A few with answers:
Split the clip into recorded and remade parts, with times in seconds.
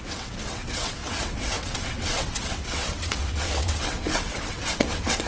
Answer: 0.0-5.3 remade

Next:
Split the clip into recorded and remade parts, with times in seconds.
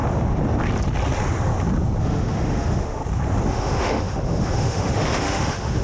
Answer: 0.0-2.0 recorded; 2.0-3.0 remade; 3.0-3.5 recorded; 3.5-5.8 remade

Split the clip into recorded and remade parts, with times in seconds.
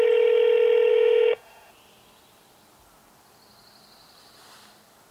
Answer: 0.0-0.9 recorded; 0.9-1.7 remade; 1.7-5.1 recorded